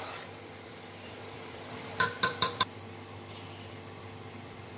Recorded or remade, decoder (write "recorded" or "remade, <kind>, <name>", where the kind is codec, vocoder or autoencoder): remade, vocoder, BigVGAN v2